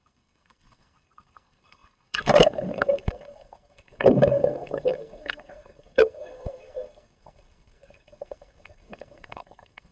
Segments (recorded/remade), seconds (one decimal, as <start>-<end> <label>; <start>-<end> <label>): 0.0-9.9 remade